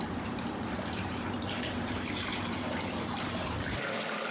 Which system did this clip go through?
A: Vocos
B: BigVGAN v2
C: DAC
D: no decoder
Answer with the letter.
B